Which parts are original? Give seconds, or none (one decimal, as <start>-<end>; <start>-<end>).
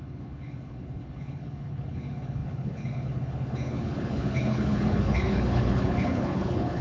none